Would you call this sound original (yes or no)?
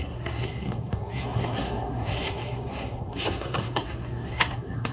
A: no